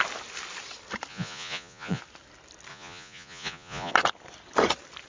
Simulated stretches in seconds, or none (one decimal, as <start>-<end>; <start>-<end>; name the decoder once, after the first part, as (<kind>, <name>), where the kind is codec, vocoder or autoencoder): 1.1-2.0 (vocoder, Vocos); 2.7-3.9